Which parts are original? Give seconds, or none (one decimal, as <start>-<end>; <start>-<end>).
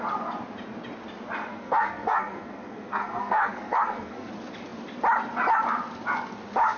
0.0-1.5; 4.3-6.8